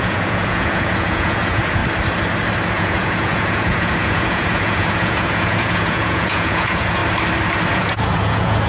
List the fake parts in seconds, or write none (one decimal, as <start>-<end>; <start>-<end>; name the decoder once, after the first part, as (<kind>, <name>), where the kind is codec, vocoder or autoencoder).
0.0-1.8 (vocoder, Vocos); 2.7-7.0; 7.7-8.7